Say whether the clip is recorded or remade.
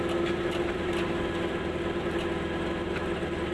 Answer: recorded